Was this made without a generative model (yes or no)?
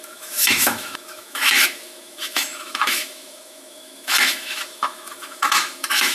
no